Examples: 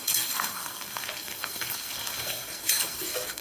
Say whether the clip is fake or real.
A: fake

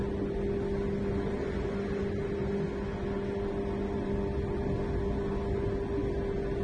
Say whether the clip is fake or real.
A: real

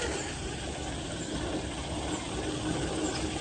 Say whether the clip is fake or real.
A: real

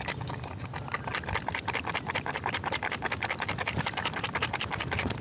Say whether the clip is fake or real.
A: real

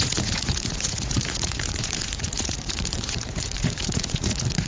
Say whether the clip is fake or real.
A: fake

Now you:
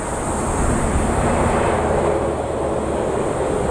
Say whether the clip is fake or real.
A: real